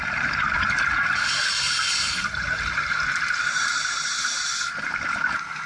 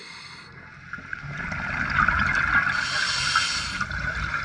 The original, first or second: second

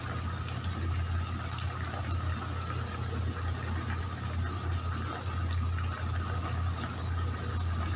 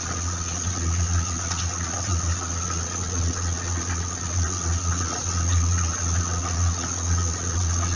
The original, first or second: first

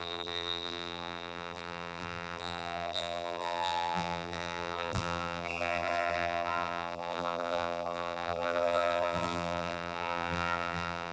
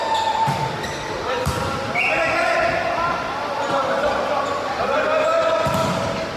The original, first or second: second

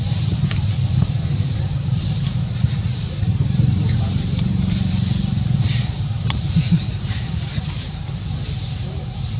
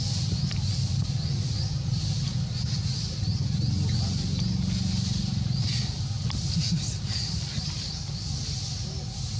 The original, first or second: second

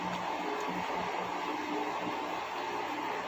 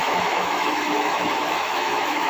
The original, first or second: first